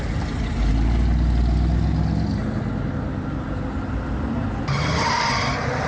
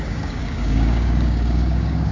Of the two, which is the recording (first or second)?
first